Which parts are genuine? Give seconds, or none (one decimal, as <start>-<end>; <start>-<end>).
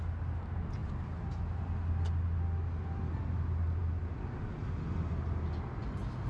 0.0-6.3